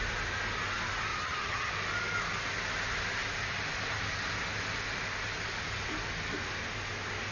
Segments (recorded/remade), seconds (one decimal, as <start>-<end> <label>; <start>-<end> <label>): 0.0-1.1 recorded; 1.1-1.7 remade; 1.7-7.3 recorded